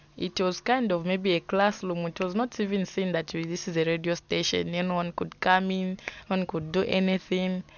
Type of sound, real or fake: real